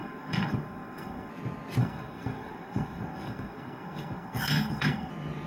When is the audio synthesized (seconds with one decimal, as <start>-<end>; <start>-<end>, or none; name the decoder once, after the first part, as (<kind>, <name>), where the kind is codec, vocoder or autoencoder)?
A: 0.0-1.3 (codec, SNAC); 1.8-5.1